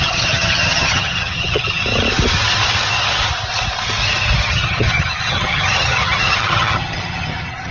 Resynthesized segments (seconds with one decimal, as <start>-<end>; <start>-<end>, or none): 0.0-1.8; 4.5-7.7